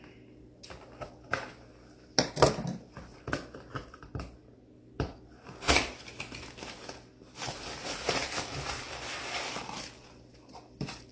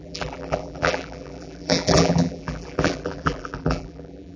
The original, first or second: first